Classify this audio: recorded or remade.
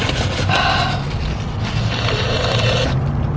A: recorded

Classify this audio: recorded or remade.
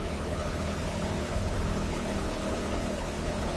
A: remade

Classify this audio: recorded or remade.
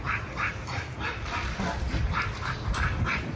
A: recorded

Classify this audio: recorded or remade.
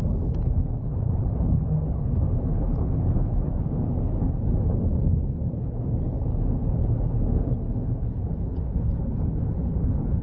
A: remade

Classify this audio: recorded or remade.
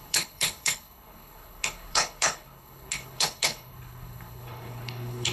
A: remade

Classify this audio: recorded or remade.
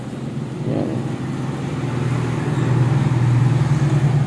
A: recorded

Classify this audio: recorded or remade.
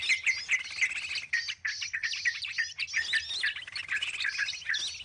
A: recorded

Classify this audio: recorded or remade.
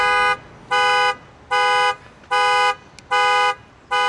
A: recorded